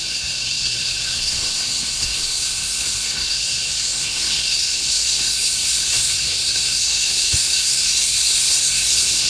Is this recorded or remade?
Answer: remade